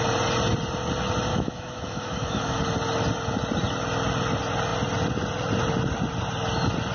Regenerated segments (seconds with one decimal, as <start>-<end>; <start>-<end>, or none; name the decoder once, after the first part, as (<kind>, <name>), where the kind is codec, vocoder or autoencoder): 1.3-2.6 (autoencoder, DAC-VAE)